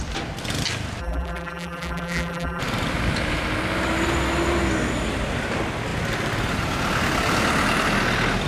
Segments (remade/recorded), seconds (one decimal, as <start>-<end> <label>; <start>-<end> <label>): 0.0-1.0 recorded; 1.0-2.6 remade; 2.6-8.5 recorded